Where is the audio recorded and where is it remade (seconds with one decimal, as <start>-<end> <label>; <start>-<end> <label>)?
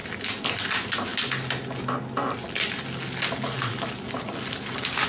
0.0-5.1 recorded